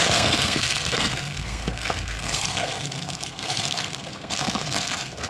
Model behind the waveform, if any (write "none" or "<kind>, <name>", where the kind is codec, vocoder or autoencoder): codec, SNAC